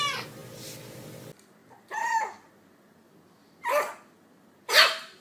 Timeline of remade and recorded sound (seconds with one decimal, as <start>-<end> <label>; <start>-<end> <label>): 0.0-5.2 recorded